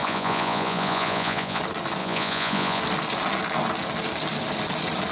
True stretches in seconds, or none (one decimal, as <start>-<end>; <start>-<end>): 1.6-2.0; 2.8-5.1